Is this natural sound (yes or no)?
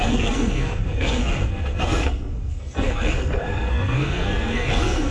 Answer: no